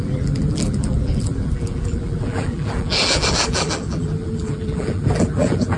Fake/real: fake